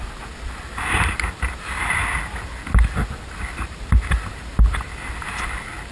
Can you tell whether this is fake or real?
real